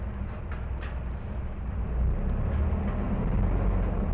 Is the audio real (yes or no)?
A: yes